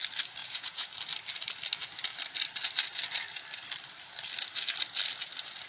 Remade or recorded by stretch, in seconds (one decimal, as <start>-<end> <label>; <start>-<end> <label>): 0.0-0.4 recorded; 0.4-0.9 remade; 0.9-5.7 recorded